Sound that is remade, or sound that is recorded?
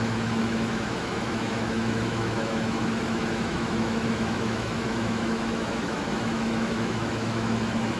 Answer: remade